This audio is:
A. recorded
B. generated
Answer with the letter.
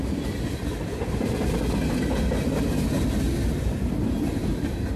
A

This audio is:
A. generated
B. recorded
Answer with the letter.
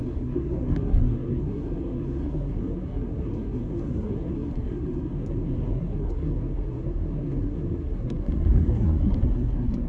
A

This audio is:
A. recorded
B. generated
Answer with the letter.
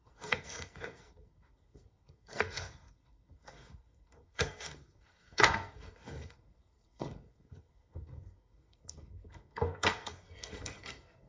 B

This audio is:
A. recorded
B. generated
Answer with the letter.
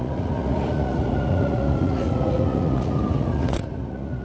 B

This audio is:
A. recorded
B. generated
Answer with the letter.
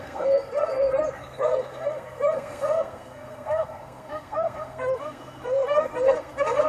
B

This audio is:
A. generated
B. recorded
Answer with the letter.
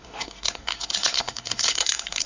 A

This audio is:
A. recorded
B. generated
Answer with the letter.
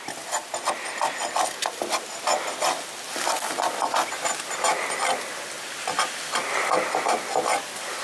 A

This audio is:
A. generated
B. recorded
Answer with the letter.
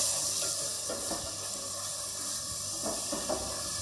B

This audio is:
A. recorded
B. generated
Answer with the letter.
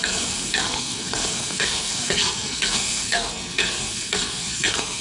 B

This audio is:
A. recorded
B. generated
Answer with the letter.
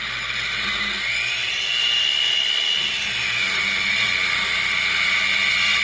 A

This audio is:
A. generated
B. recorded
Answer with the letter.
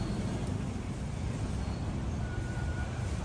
B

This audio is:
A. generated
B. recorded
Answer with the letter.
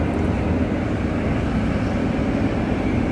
B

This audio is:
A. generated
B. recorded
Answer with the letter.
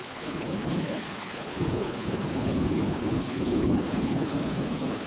A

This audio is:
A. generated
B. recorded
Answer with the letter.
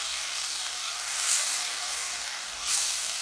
A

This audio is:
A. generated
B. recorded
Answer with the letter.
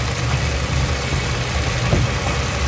B